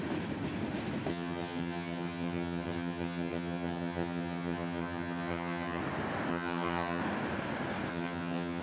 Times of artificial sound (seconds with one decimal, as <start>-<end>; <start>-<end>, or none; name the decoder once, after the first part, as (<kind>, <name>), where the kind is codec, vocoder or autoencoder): 1.1-5.8 (vocoder, HiFi-GAN); 6.3-7.0; 7.9-8.6